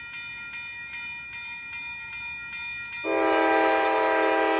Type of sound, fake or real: real